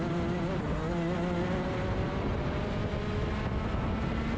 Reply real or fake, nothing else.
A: real